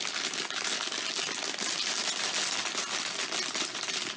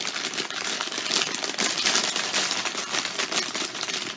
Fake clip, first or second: second